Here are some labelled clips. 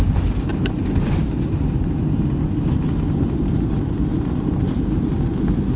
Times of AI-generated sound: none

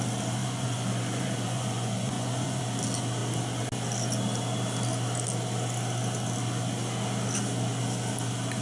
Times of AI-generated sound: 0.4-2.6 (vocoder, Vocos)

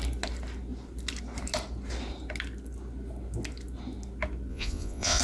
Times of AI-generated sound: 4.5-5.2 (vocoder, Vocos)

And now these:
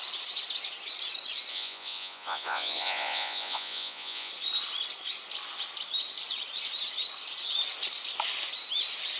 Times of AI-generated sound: 1.5-4.3 (vocoder, Vocos)

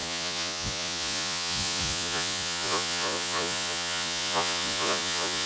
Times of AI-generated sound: 0.0-5.5 (vocoder, Vocos)

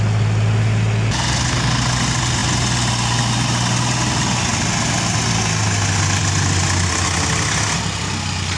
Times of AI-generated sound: none

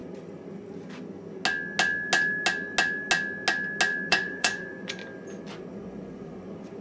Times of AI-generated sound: 4.1-5.0 (vocoder, Vocos); 5.7-6.8

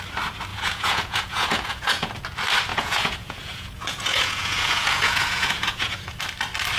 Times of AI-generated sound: 0.5-2.1 (vocoder, Vocos); 2.7-6.2